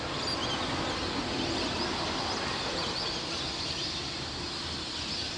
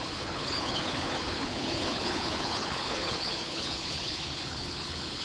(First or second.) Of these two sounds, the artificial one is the second